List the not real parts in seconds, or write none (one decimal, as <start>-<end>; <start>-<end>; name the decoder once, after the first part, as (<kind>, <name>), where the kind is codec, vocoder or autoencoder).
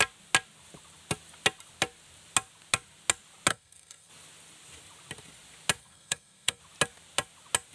3.5-4.1 (codec, SNAC); 5.8-6.6